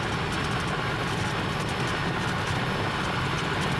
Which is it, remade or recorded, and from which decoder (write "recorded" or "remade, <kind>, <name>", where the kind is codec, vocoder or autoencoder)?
recorded